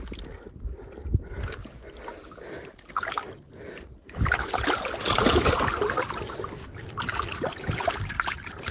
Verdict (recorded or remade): recorded